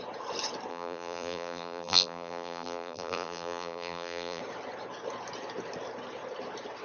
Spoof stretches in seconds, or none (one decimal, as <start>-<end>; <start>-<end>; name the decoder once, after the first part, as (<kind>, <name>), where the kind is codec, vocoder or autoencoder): 0.7-4.4 (vocoder, BigVGAN v2)